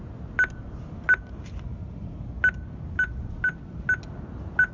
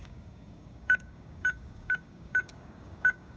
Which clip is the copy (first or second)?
second